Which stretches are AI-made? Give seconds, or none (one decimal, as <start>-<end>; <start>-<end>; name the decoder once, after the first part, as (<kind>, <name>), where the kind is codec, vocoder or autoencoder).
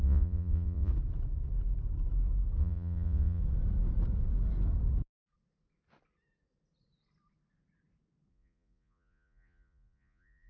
0.0-0.9 (vocoder, Vocos); 2.6-3.4; 8.3-10.5